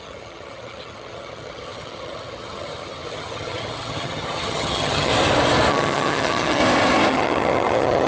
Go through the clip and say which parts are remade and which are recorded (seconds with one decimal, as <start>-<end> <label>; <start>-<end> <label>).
0.0-5.1 remade; 5.1-5.7 recorded; 5.7-6.6 remade; 6.6-7.1 recorded; 7.1-8.1 remade